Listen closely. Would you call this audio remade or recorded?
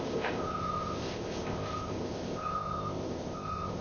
remade